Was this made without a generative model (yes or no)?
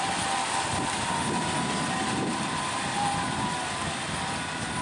no